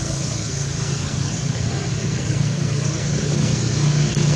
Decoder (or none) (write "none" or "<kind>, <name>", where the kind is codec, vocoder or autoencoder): codec, SNAC